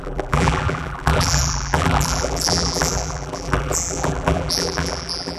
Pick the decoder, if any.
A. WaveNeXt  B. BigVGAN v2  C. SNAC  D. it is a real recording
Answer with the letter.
B